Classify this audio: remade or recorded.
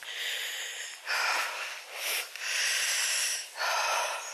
recorded